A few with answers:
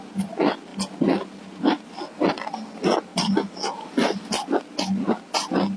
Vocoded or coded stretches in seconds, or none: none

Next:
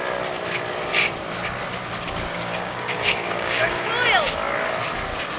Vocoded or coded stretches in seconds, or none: 2.3-3.9 (codec, DAC)

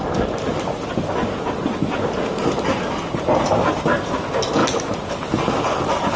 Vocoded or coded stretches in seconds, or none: none

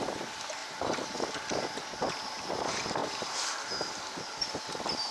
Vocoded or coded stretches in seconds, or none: none

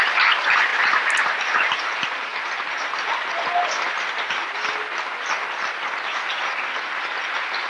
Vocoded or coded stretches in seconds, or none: none